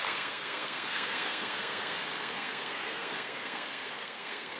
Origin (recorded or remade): remade